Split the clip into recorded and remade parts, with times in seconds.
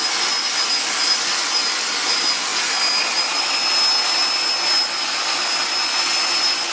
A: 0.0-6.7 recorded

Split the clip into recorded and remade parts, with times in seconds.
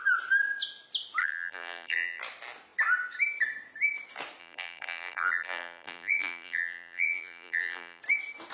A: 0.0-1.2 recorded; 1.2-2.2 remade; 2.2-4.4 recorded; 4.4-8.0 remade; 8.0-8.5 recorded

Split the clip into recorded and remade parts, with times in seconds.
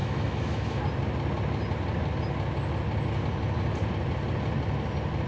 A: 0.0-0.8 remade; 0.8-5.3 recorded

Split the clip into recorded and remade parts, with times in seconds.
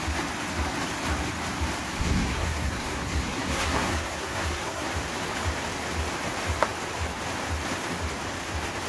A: 0.0-2.0 recorded; 2.0-4.9 remade; 4.9-8.9 recorded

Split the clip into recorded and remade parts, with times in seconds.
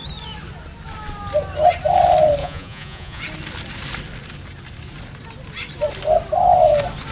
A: 0.0-2.4 recorded; 2.4-3.2 remade; 3.2-7.1 recorded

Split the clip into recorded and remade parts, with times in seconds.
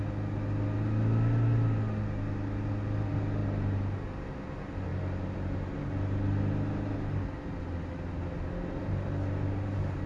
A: 0.0-10.1 recorded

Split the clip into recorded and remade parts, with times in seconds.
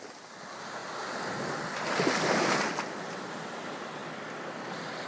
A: 0.0-5.1 recorded